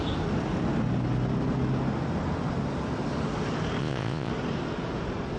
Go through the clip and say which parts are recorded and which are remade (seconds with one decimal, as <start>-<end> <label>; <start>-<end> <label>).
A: 0.0-3.8 recorded; 3.8-4.3 remade; 4.3-5.4 recorded